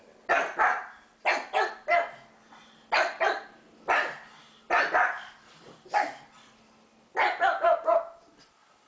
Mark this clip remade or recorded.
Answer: recorded